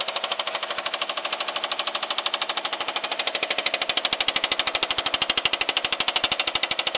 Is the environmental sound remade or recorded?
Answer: recorded